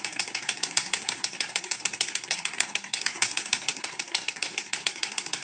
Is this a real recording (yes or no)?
no